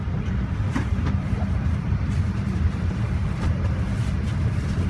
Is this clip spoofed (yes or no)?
yes